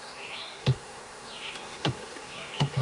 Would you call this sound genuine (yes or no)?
no